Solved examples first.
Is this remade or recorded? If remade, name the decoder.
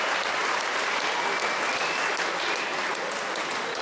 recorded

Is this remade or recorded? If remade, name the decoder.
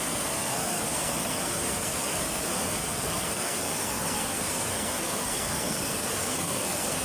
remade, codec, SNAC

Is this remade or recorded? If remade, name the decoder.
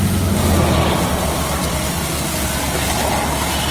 recorded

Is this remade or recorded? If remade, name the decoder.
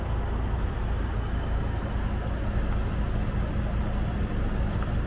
recorded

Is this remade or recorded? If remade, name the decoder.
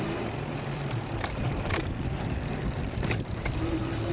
remade, vocoder, BigVGAN v2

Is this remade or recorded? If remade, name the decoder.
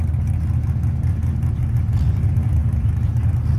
recorded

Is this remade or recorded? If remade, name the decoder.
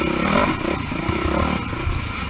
recorded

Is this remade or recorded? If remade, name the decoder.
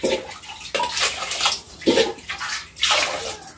recorded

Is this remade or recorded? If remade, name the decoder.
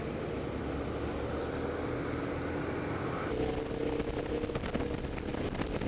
recorded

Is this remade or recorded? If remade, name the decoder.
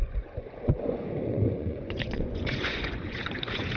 remade, vocoder, Vocos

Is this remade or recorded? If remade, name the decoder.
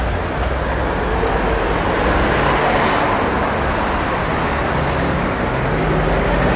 recorded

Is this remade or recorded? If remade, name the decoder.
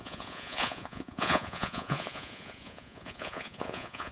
remade, vocoder, Vocos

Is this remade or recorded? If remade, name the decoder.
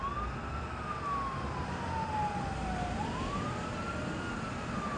recorded